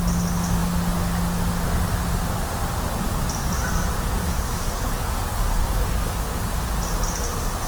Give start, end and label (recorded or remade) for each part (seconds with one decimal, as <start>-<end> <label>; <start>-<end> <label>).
0.0-4.2 recorded; 4.2-6.5 remade; 6.5-7.7 recorded